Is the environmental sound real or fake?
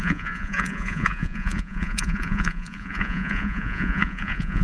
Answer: fake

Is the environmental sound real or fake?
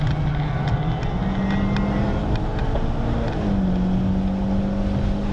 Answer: real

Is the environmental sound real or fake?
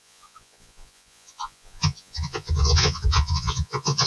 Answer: fake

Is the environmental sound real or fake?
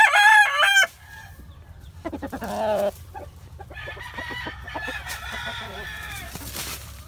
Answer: fake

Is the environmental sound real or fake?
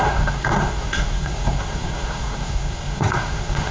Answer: fake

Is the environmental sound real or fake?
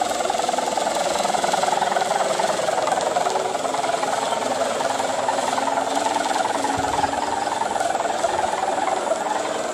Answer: real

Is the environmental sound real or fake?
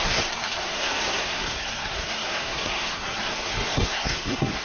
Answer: fake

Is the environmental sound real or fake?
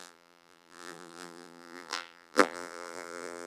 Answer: fake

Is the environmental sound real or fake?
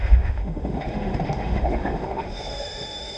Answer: fake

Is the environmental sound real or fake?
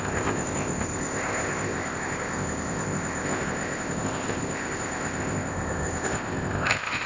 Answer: fake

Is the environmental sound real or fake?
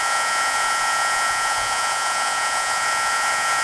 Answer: fake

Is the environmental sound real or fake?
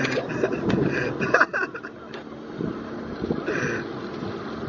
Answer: real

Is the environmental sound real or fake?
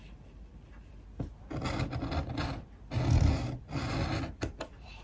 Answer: real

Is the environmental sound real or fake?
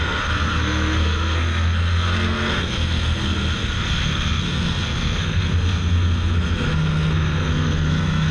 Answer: fake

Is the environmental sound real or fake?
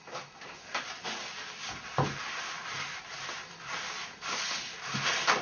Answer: real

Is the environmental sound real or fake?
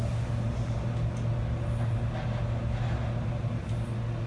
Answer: real